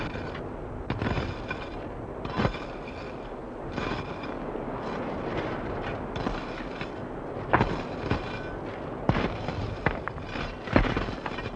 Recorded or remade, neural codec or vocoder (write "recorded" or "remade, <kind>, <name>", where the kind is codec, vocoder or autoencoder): recorded